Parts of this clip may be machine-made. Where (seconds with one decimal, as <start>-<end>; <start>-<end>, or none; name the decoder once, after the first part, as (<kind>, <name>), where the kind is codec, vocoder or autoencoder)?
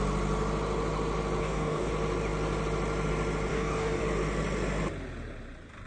1.4-1.9 (codec, DAC); 3.5-4.0